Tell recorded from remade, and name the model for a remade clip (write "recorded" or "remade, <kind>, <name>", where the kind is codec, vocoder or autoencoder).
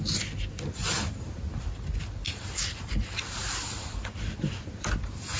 recorded